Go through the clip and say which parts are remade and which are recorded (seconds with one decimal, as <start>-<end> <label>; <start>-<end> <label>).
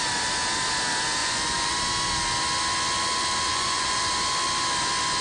0.0-1.2 recorded; 1.2-1.7 remade; 1.7-3.5 recorded; 3.5-4.0 remade; 4.0-5.2 recorded